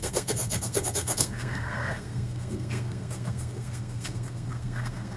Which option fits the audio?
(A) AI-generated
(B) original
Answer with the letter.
A